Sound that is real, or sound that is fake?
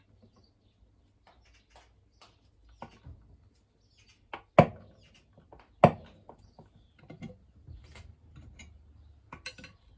real